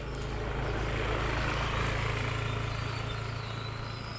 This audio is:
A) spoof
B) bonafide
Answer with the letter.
B